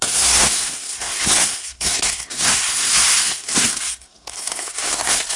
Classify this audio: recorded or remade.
remade